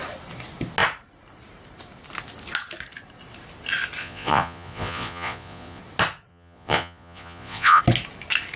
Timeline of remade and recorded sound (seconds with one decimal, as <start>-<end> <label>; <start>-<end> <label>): 0.0-4.0 recorded; 4.0-5.8 remade; 5.8-6.3 recorded; 6.3-7.8 remade; 7.8-8.6 recorded